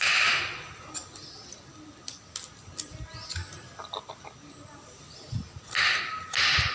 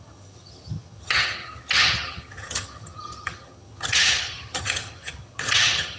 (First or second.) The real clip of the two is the first